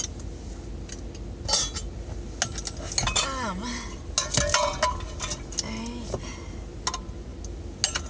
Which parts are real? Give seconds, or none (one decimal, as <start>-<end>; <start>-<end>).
0.0-8.1